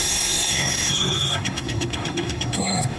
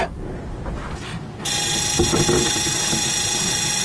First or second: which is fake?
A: first